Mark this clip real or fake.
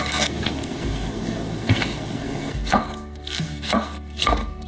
fake